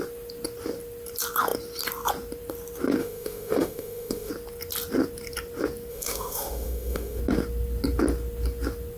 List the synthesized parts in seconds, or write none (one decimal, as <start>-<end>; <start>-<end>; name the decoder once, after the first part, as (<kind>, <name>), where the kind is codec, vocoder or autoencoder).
3.0-4.3 (autoencoder, DAC-VAE); 5.9-7.2